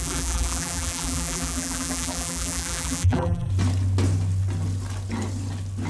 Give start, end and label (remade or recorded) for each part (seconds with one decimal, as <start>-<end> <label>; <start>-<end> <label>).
0.0-3.5 remade; 3.5-5.9 recorded